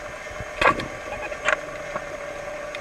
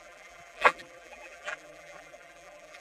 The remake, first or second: second